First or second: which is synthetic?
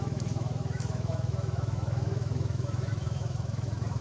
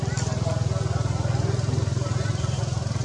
first